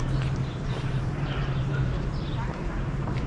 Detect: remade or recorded remade